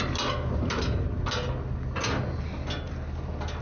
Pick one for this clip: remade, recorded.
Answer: recorded